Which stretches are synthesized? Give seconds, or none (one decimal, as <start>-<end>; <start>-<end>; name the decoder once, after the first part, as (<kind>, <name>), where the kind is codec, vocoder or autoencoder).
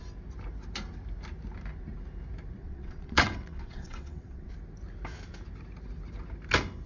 2.6-4.5 (vocoder, WaveNeXt)